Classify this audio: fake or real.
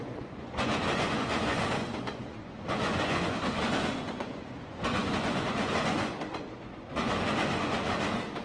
fake